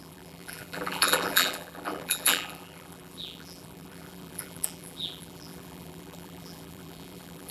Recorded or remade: remade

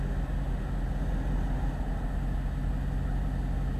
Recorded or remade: recorded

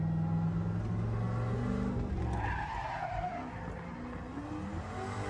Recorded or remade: recorded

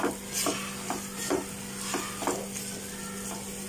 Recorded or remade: recorded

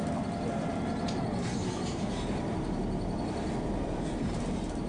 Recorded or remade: remade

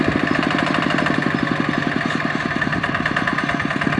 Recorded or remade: recorded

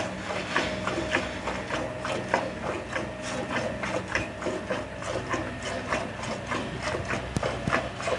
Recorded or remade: recorded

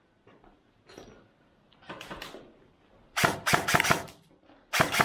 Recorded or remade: recorded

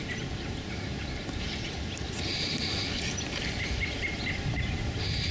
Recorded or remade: remade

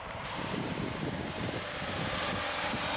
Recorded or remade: remade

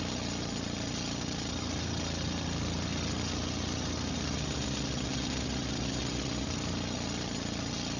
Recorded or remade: recorded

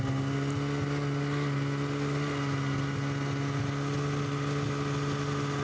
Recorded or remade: recorded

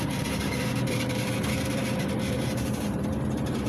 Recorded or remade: remade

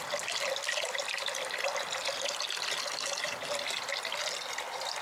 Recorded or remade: recorded